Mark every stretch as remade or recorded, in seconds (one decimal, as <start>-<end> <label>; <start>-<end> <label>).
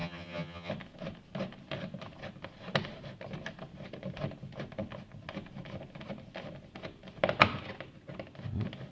0.0-0.7 remade; 0.7-8.9 recorded